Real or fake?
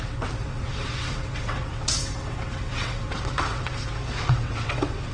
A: fake